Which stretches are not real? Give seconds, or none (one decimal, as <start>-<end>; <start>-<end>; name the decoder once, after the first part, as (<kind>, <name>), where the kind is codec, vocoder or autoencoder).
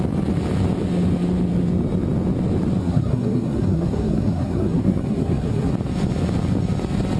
2.8-5.7 (codec, SNAC)